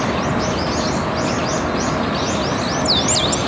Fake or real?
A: real